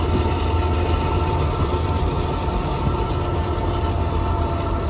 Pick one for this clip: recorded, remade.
recorded